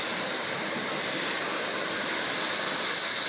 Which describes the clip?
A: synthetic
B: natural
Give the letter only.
B